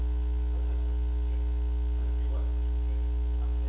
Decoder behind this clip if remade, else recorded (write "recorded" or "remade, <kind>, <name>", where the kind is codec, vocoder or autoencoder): recorded